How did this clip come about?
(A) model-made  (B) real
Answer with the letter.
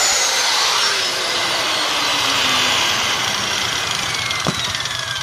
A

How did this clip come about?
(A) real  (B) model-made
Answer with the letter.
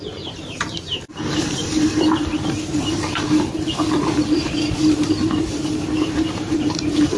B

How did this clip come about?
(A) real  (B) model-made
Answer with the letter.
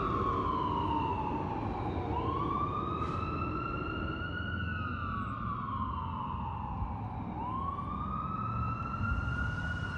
A